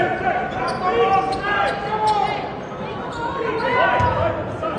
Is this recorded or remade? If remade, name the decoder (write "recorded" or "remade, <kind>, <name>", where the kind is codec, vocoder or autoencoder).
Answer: recorded